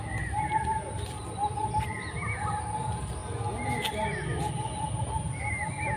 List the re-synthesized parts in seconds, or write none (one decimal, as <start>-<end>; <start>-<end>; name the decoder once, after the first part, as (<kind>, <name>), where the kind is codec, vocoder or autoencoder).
none